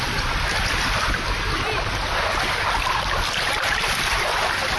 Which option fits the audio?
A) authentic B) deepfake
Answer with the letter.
A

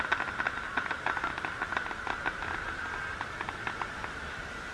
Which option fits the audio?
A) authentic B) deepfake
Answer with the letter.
A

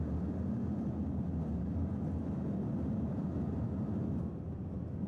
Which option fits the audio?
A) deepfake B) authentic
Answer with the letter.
B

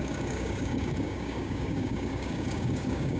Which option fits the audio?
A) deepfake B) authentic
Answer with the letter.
A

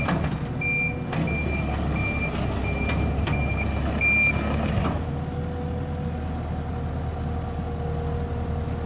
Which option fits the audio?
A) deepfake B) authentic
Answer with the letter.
B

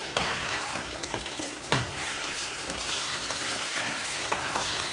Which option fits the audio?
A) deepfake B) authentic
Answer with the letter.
A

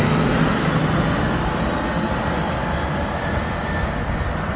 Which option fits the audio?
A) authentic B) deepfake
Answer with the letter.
A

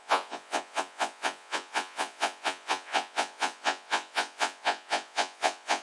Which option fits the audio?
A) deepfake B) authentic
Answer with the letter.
A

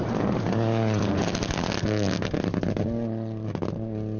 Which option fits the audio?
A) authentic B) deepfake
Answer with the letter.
A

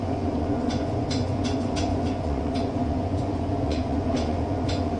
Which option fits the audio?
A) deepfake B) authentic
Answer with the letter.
A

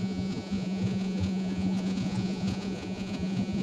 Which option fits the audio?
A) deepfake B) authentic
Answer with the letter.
A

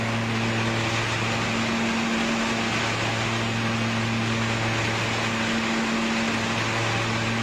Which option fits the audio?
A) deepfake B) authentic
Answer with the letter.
B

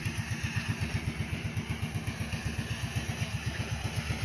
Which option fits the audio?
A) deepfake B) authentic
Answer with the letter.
B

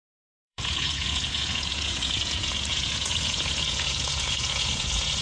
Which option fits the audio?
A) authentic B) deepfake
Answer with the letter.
B